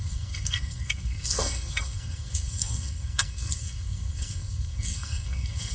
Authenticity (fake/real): fake